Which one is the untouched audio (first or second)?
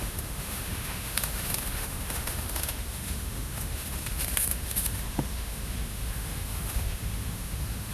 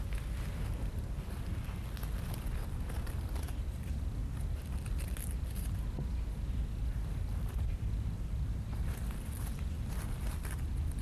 second